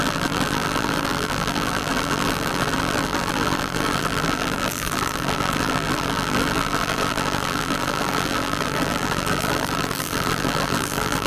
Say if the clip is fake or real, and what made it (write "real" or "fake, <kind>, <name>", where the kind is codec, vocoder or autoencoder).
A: fake, vocoder, BigVGAN v2